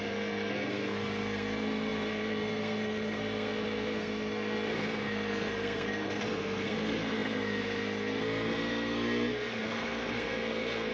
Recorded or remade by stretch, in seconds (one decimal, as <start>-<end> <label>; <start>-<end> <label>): 0.0-10.9 remade